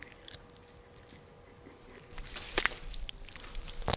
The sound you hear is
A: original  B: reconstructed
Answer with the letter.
A